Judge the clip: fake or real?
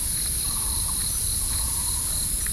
real